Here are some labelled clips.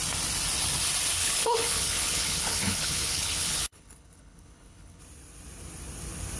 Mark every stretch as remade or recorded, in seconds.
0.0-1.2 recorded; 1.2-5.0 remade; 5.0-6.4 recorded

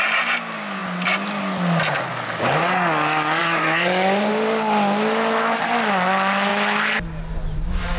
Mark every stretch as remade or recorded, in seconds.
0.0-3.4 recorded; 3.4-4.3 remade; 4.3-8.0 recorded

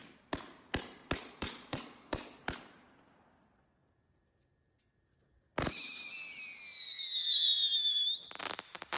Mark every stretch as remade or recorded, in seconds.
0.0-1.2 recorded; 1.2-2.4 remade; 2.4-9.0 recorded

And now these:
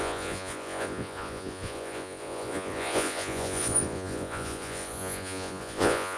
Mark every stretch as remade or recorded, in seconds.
0.0-6.2 remade

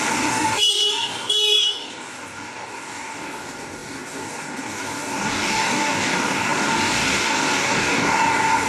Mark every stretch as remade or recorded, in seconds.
0.0-8.7 remade